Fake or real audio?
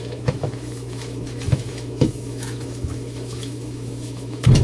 fake